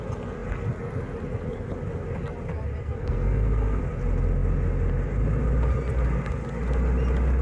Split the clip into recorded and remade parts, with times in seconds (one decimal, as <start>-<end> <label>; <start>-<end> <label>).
0.0-2.8 recorded; 2.8-3.8 remade; 3.8-7.4 recorded